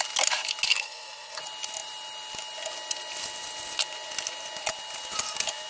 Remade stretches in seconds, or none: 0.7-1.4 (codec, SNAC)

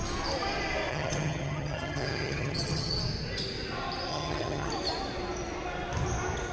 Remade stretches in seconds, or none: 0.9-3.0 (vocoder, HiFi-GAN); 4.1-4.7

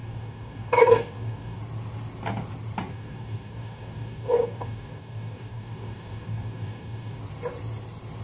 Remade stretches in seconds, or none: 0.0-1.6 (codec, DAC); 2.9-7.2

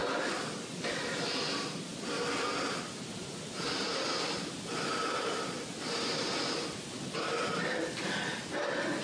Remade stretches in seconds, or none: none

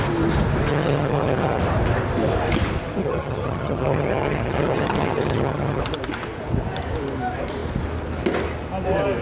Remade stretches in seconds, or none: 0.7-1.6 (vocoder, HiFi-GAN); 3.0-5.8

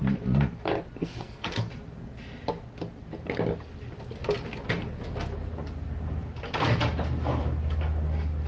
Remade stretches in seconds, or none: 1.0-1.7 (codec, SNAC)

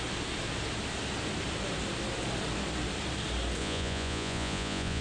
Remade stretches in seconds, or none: 3.6-5.0 (vocoder, Vocos)